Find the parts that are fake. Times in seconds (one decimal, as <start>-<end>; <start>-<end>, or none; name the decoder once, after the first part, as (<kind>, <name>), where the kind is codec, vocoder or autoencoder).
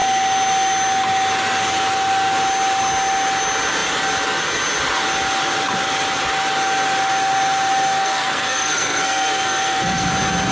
8.0-10.1 (codec, SNAC)